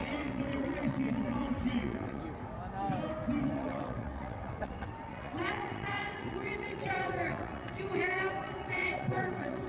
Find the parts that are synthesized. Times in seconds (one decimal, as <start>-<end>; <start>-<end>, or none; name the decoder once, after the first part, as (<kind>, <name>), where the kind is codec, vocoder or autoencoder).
0.0-2.2 (vocoder, WaveNeXt); 3.4-9.7